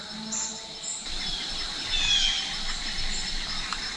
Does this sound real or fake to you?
real